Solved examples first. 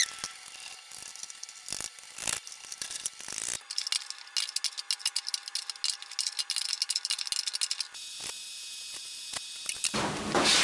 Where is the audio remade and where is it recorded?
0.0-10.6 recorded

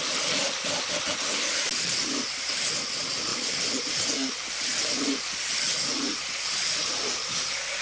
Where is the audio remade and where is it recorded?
0.0-7.8 recorded

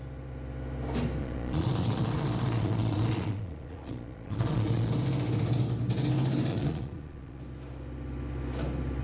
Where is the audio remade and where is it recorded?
0.0-1.2 recorded; 1.2-4.9 remade; 4.9-6.5 recorded; 6.5-7.4 remade; 7.4-9.0 recorded

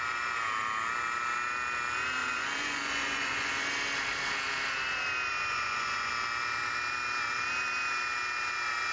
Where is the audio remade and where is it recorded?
0.0-2.2 recorded; 2.2-3.5 remade; 3.5-5.3 recorded; 5.3-6.1 remade; 6.1-8.9 recorded

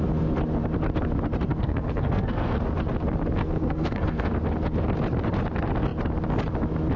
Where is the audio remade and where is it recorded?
0.0-1.5 recorded; 1.5-2.6 remade; 2.6-3.4 recorded; 3.4-4.3 remade; 4.3-7.0 recorded

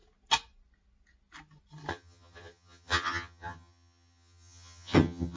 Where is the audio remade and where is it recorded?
0.0-1.9 recorded; 1.9-5.4 remade